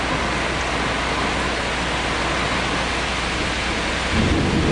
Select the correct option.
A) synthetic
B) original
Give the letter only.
B